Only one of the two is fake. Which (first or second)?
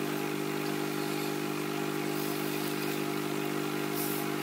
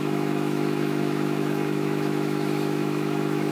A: second